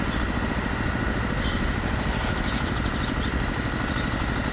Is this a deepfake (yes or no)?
no